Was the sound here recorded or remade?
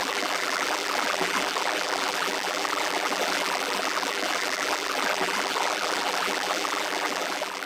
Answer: remade